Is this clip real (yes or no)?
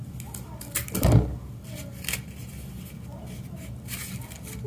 yes